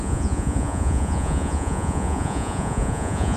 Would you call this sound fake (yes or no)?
yes